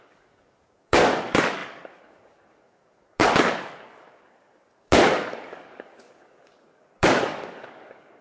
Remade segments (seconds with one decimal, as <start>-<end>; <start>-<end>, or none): 0.0-8.2